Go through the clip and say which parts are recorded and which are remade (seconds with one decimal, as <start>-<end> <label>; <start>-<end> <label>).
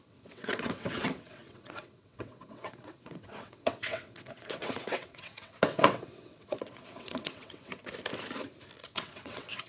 0.0-7.8 remade; 7.8-8.8 recorded; 8.8-9.7 remade